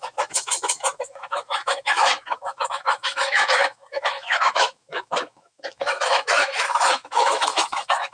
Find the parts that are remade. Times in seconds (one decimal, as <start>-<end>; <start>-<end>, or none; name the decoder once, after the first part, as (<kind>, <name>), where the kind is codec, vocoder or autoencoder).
0.0-8.1 (autoencoder, DAC-VAE)